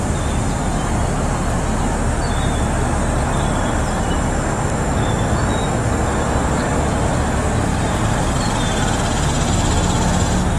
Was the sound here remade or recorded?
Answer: recorded